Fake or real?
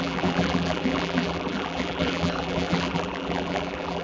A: fake